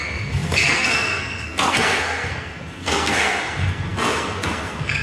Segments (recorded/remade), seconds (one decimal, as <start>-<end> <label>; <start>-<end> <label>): 0.0-5.0 remade